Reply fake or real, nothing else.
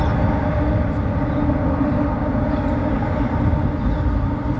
real